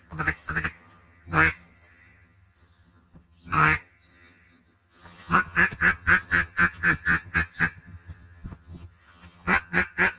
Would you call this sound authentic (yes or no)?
no